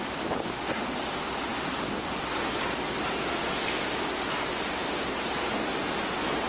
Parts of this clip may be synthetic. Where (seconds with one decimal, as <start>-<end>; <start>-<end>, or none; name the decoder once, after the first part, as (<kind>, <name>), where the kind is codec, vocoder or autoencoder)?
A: none